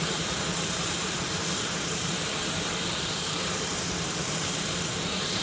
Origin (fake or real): fake